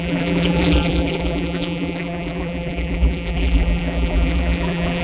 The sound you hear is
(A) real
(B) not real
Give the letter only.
B